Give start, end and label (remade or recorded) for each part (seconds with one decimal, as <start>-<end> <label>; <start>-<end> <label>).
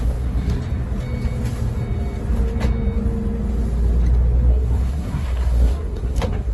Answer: 0.0-0.6 remade; 0.6-4.5 recorded; 4.5-6.5 remade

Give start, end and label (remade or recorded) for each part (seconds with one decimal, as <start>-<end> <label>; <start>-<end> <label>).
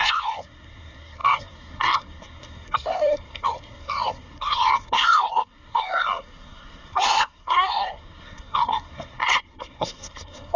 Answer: 0.0-10.6 remade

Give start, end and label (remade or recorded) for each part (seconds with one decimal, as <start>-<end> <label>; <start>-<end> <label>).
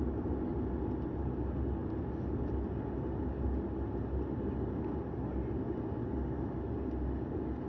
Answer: 0.0-7.7 recorded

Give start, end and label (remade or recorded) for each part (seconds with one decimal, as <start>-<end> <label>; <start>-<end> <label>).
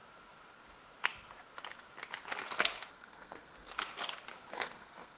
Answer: 0.0-2.9 recorded; 2.9-3.7 remade; 3.7-4.5 recorded; 4.5-5.2 remade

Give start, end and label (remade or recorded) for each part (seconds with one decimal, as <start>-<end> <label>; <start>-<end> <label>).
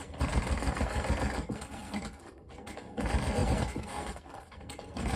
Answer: 0.0-5.2 remade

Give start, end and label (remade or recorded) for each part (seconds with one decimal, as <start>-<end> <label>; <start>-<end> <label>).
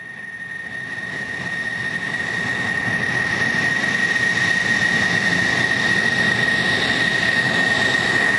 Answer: 0.0-8.4 recorded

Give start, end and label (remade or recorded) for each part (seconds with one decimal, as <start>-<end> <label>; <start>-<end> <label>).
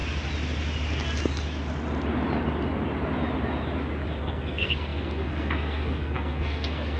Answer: 0.0-4.2 recorded; 4.2-7.0 remade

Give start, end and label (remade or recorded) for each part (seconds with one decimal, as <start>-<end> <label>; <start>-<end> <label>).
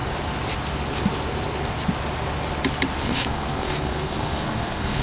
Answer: 0.0-3.0 recorded; 3.0-5.0 remade